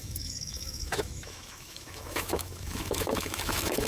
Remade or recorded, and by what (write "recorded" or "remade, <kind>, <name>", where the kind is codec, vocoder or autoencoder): remade, autoencoder, DAC-VAE